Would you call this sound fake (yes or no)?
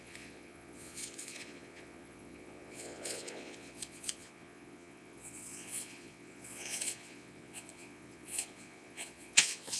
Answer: yes